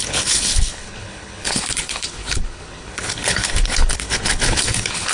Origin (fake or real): fake